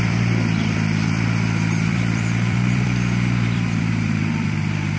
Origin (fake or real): fake